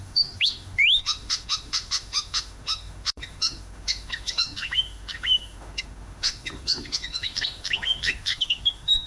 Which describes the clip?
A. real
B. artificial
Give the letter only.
B